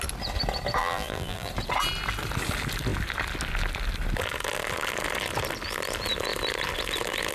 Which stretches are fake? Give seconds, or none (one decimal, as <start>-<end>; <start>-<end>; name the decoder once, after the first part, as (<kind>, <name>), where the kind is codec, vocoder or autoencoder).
0.8-1.5 (vocoder, BigVGAN v2)